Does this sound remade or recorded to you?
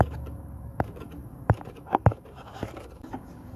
remade